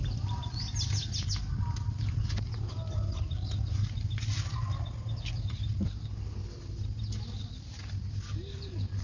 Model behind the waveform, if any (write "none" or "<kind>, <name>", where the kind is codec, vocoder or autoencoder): none